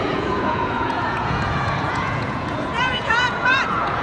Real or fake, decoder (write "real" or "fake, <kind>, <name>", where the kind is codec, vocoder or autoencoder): fake, vocoder, Vocos